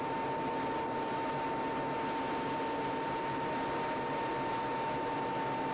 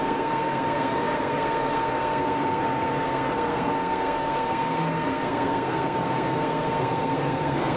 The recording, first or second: first